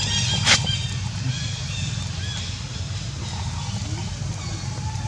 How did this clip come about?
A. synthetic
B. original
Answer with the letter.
B